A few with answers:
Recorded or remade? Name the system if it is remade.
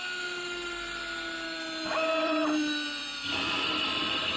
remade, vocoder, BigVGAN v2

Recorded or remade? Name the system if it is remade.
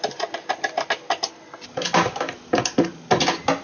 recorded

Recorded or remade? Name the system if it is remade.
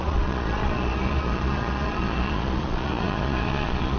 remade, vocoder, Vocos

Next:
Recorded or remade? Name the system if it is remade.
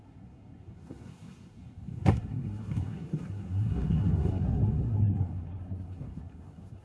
remade, codec, SNAC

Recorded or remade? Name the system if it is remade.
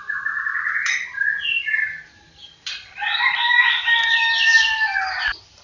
remade, vocoder, BigVGAN v2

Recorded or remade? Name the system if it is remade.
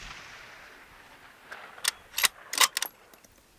recorded